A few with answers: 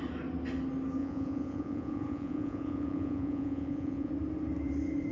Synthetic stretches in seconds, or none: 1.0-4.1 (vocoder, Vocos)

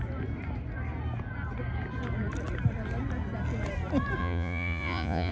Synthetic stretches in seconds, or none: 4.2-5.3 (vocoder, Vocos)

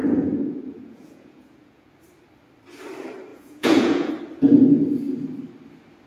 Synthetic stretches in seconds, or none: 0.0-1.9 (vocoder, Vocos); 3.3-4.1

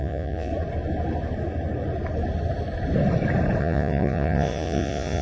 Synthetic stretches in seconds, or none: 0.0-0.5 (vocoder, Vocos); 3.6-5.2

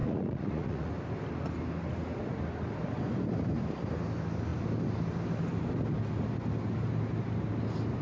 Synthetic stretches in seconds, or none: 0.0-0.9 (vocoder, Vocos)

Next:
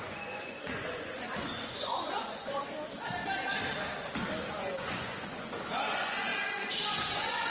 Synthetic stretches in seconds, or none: 0.0-2.6 (vocoder, Vocos); 4.5-7.5